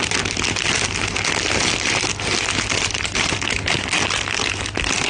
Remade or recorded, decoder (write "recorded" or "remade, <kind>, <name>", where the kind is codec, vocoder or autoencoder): recorded